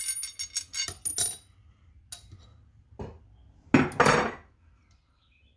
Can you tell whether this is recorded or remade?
recorded